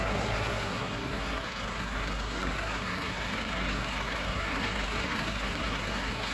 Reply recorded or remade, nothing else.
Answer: remade